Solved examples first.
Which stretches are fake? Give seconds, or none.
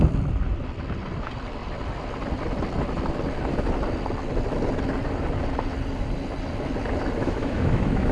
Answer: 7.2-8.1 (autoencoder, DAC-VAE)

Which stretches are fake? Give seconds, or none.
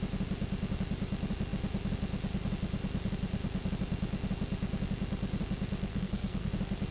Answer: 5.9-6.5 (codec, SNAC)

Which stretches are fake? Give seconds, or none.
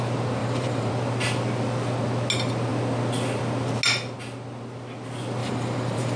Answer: 0.4-0.9 (vocoder, BigVGAN v2); 5.4-6.2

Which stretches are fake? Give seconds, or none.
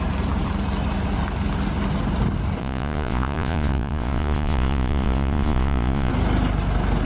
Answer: 2.6-6.1 (vocoder, Vocos)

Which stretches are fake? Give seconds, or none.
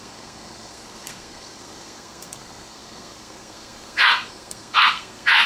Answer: 0.0-5.5 (codec, SNAC)